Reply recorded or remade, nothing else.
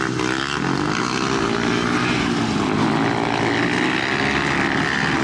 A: recorded